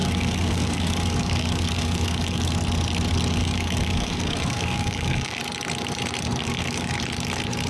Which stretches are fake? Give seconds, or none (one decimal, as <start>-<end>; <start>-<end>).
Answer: 0.0-2.5; 3.4-5.4; 6.4-7.0